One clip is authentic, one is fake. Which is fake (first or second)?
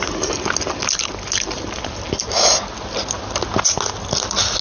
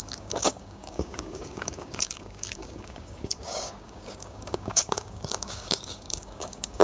second